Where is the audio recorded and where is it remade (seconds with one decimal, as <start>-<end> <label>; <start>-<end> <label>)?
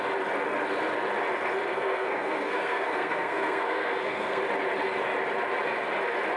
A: 0.0-1.7 recorded; 1.7-4.4 remade; 4.4-6.4 recorded